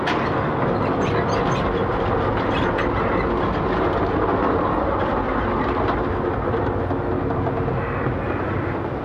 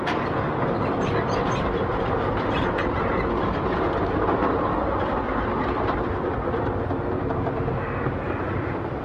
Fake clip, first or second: second